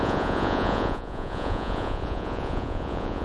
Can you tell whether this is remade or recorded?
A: remade